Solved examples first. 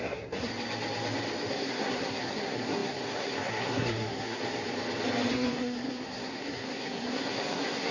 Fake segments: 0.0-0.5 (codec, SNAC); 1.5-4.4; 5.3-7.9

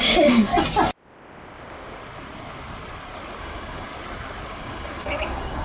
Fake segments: 0.0-0.5 (codec, DAC); 3.4-3.9; 4.5-5.6

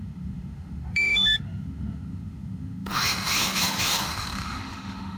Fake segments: 0.0-5.2 (autoencoder, DAC-VAE)